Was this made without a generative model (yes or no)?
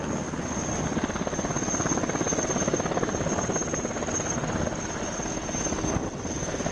yes